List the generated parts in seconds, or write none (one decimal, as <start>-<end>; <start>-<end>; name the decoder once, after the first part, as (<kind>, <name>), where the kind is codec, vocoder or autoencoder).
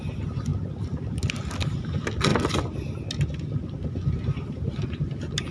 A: none